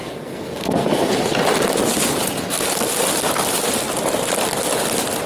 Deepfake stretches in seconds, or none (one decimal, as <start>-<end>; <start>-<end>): 0.0-1.1